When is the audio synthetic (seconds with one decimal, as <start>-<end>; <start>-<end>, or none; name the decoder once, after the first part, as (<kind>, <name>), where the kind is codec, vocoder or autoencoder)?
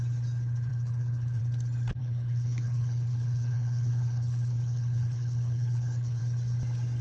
0.7-1.4 (codec, HILCodec); 2.0-6.2